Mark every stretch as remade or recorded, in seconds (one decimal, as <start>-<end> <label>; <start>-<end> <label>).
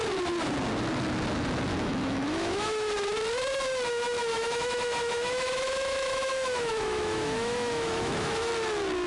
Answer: 0.0-1.7 recorded; 1.7-2.9 remade; 2.9-4.3 recorded; 4.3-8.5 remade; 8.5-9.1 recorded